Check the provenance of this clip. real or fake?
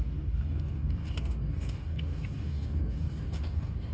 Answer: fake